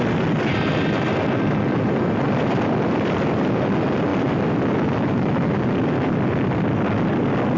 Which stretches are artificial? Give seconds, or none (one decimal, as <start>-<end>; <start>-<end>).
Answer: none